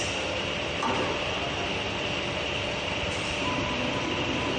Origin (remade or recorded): recorded